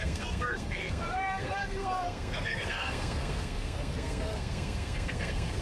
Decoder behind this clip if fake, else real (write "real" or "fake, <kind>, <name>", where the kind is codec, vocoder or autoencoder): fake, codec, SNAC